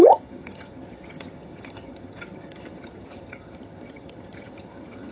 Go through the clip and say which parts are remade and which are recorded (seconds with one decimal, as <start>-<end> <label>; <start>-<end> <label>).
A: 0.0-5.1 remade